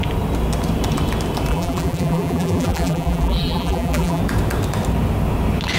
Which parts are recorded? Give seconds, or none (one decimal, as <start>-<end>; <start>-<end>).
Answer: 0.0-1.5; 4.2-5.8